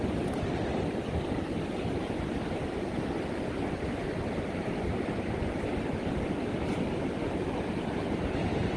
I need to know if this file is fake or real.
real